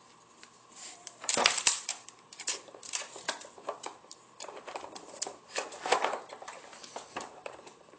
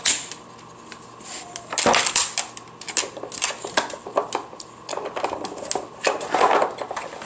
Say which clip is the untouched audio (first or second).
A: second